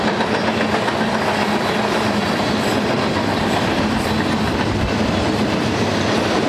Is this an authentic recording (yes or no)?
yes